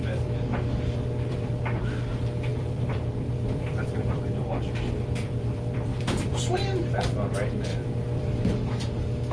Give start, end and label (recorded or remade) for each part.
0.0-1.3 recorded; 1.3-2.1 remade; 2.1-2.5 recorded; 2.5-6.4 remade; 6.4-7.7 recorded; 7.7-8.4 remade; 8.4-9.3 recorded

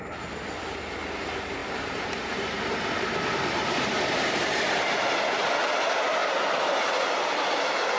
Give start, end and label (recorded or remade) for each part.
0.0-1.6 recorded; 1.6-4.6 remade; 4.6-6.2 recorded; 6.2-6.8 remade; 6.8-8.0 recorded

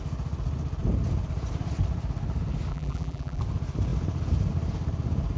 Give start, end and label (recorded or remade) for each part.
0.0-2.7 recorded; 2.7-3.4 remade; 3.4-5.4 recorded

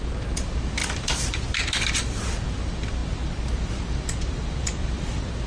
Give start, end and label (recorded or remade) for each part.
0.0-3.0 remade; 3.0-3.5 recorded; 3.5-5.5 remade

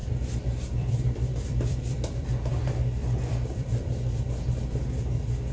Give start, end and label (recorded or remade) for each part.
0.0-2.3 remade; 2.3-3.0 recorded; 3.0-4.3 remade; 4.3-5.5 recorded

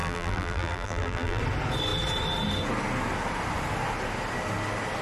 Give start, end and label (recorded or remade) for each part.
0.0-1.4 remade; 1.4-5.0 recorded